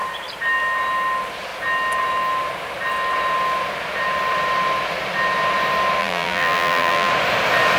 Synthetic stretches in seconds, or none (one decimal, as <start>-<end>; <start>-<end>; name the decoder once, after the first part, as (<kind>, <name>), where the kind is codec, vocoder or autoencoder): 6.0-7.1 (vocoder, BigVGAN v2)